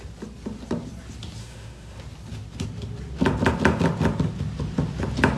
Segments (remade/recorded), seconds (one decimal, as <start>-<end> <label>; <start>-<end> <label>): 0.0-1.4 recorded; 1.4-2.0 remade; 2.0-5.4 recorded